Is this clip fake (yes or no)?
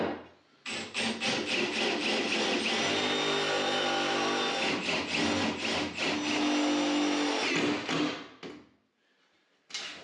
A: no